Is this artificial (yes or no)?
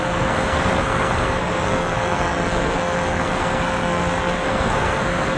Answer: yes